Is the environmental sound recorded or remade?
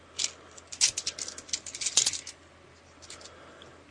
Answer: recorded